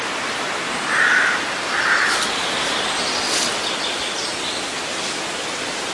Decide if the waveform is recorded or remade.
recorded